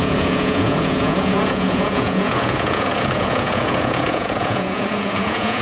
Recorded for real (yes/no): no